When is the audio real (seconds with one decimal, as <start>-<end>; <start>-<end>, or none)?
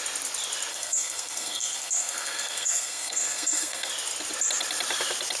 0.0-0.7; 3.9-5.4